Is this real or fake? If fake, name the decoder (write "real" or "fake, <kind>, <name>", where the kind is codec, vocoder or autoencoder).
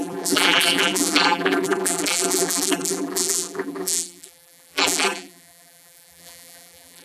fake, vocoder, BigVGAN v2